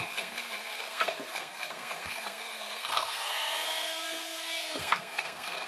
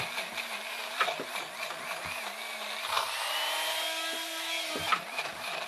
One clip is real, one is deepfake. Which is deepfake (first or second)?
first